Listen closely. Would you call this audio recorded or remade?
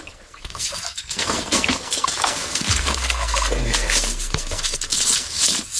remade